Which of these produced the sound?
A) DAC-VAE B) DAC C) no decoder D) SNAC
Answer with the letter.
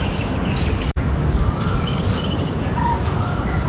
B